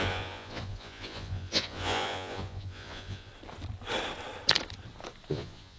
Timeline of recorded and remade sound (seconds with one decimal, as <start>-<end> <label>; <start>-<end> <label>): 0.0-3.3 remade; 3.3-5.3 recorded; 5.3-5.8 remade

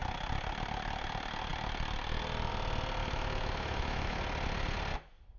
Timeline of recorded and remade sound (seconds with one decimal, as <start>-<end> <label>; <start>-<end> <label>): 0.0-3.0 recorded; 3.0-4.2 remade; 4.2-5.4 recorded

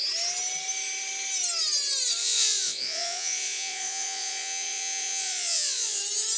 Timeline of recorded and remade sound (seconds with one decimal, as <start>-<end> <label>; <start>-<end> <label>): 0.0-2.2 recorded; 2.2-6.0 remade; 6.0-6.4 recorded

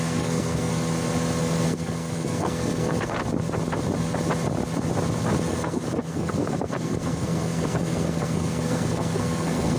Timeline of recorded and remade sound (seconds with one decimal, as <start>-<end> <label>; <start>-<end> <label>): 0.0-0.7 remade; 0.7-1.4 recorded; 1.4-3.2 remade; 3.2-5.5 recorded; 5.5-9.8 remade